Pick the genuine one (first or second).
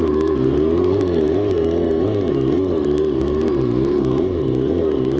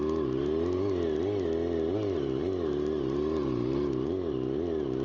second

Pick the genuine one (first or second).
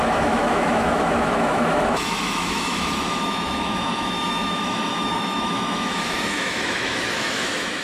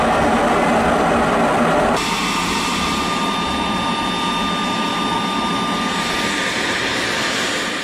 second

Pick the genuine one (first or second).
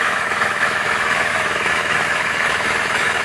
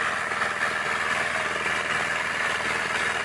second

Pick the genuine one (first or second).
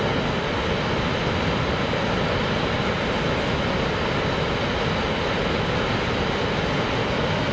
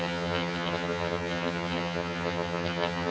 first